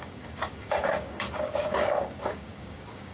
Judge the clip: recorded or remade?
remade